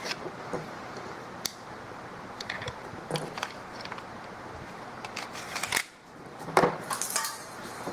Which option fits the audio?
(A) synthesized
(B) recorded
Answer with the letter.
A